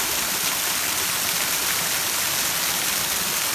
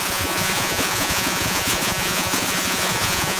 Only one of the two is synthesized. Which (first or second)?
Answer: second